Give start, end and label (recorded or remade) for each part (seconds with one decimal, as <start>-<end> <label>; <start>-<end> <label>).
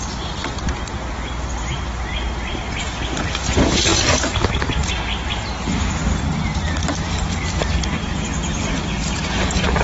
0.0-9.8 recorded